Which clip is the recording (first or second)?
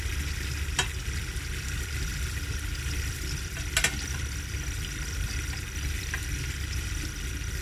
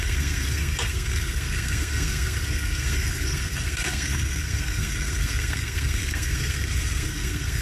first